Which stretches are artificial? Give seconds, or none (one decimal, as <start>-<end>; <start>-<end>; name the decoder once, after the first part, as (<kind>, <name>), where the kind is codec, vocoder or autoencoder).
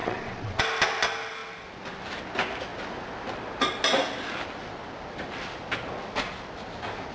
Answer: 0.0-0.6 (vocoder, Vocos)